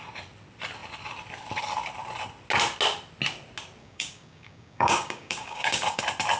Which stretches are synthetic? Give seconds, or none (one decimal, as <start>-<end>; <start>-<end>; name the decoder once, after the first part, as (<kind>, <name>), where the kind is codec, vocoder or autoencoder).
3.8-6.0 (codec, DAC)